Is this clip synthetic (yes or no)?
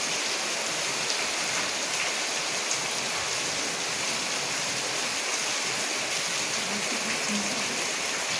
no